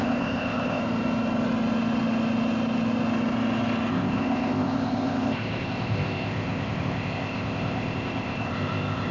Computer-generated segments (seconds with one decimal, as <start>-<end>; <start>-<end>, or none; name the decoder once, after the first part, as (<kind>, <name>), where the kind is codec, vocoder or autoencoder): 0.0-0.8 (codec, ZipCodec); 3.9-9.1